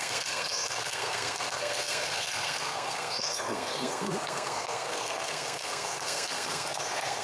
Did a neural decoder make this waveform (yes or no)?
yes